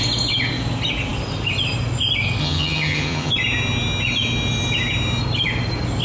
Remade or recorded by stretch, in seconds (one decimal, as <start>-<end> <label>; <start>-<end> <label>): 0.0-2.4 recorded; 2.4-3.3 remade; 3.3-6.0 recorded